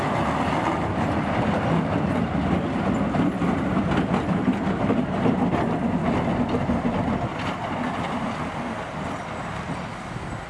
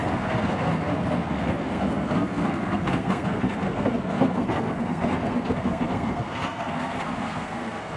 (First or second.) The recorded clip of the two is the first